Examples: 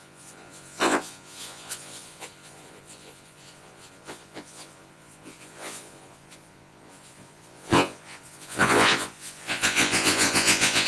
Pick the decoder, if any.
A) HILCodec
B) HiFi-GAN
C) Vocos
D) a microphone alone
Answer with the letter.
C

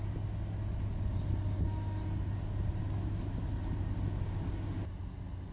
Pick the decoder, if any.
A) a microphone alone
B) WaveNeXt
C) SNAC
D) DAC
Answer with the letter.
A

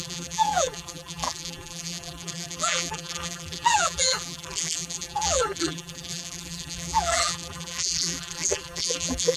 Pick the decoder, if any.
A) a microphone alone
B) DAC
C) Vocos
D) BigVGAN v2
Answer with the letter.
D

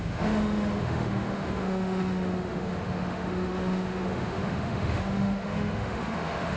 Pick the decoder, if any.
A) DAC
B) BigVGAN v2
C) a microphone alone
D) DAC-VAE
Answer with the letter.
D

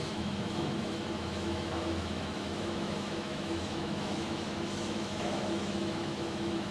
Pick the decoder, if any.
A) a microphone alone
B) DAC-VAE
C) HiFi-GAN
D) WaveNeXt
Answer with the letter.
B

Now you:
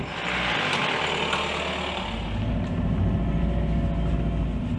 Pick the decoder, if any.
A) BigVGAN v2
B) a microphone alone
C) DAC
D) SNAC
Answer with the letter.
B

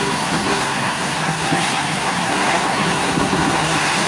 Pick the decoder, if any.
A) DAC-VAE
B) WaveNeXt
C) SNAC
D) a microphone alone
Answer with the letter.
C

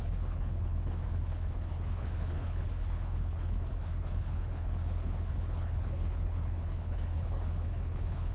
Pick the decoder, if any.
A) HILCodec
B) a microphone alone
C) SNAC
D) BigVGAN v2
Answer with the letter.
A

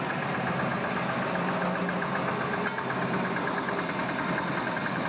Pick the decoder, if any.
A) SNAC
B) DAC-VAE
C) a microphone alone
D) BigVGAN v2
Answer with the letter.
C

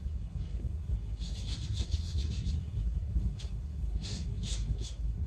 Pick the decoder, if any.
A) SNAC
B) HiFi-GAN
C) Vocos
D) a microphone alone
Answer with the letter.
A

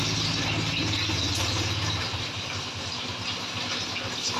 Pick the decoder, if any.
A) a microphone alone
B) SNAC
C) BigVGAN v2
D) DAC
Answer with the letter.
A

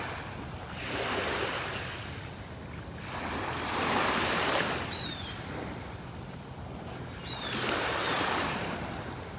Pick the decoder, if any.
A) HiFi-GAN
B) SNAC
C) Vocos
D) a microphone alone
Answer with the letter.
D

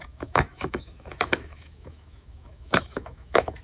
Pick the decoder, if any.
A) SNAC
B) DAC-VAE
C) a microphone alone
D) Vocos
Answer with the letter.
B